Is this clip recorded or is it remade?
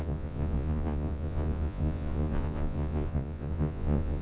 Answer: remade